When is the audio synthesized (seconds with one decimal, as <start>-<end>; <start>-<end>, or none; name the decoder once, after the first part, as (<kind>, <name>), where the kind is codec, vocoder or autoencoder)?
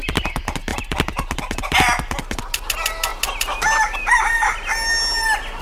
none